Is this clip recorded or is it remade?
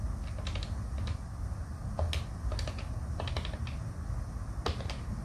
recorded